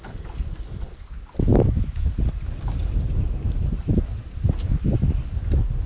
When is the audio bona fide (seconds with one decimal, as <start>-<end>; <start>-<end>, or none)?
0.0-1.5; 2.1-5.9